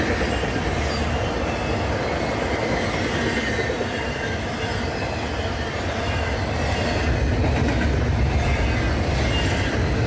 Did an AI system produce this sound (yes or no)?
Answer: no